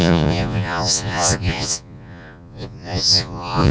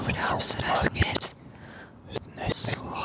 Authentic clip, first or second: second